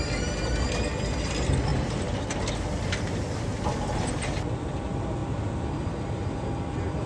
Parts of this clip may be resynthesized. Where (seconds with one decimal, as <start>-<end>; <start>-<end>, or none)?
none